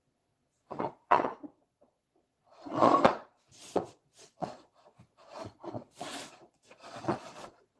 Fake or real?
fake